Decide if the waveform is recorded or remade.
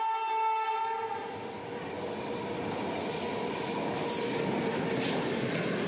recorded